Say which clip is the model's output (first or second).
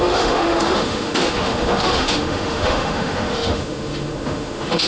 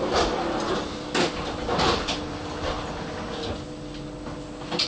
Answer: first